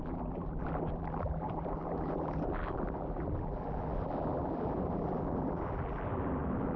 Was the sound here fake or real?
fake